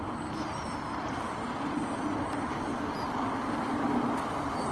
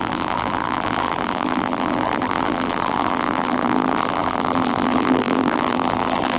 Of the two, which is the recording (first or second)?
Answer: first